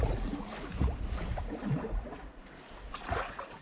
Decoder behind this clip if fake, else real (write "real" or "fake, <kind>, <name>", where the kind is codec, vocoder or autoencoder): fake, vocoder, Vocos